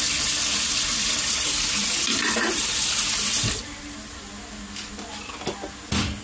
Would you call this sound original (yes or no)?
yes